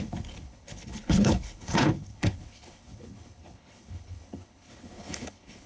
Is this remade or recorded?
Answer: remade